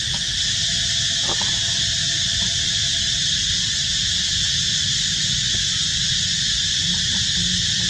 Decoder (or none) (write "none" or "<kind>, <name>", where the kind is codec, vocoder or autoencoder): none